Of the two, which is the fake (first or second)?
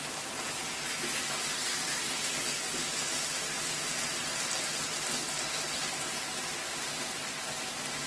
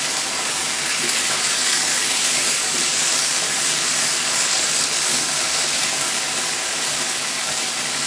second